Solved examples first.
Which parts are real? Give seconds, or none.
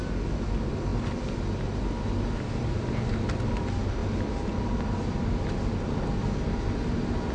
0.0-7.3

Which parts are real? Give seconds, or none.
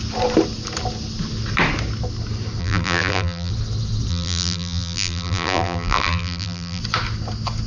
0.0-2.6; 3.5-4.1; 6.8-7.7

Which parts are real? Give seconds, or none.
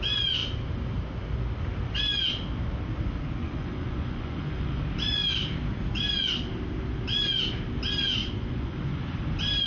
0.0-3.4; 4.8-8.2; 9.0-9.7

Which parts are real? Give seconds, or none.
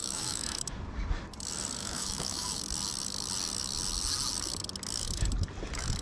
0.6-1.8; 2.6-6.0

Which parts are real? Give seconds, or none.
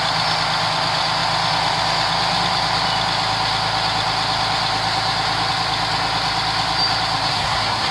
0.0-7.3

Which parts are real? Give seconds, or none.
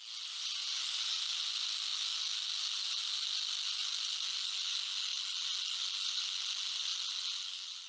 0.0-7.9